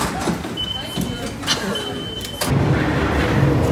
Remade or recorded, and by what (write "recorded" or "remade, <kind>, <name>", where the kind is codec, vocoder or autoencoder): recorded